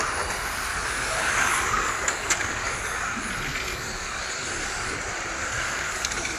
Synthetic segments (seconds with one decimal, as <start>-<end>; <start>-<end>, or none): 0.7-3.3; 3.7-4.9; 5.4-6.4